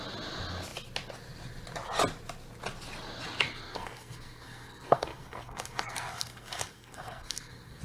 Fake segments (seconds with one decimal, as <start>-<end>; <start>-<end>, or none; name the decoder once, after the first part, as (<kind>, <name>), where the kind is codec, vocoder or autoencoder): 3.5-7.8 (codec, SNAC)

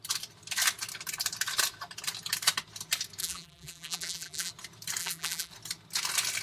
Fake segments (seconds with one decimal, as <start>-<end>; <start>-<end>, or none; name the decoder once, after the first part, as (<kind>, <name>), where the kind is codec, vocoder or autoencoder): 3.2-4.5 (vocoder, BigVGAN v2); 5.0-5.5

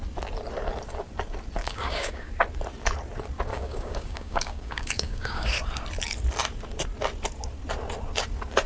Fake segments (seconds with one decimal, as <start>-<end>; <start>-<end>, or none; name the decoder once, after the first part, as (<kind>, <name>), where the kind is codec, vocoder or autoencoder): 1.6-2.3 (codec, DAC); 3.5-5.5

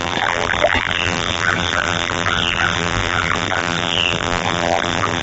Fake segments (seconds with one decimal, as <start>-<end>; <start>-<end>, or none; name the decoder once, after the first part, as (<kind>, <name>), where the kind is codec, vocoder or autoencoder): 0.0-5.2 (vocoder, BigVGAN v2)

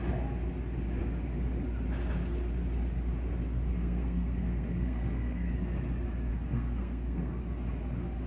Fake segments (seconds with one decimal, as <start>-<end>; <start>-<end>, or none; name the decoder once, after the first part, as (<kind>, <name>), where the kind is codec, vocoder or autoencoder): 3.4-5.5 (codec, SNAC); 6.3-7.4

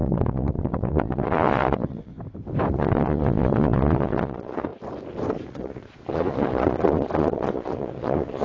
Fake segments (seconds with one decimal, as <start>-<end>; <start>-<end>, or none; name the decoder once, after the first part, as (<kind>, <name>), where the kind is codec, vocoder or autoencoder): 0.0-2.1 (vocoder, Vocos); 2.7-4.7; 5.5-8.4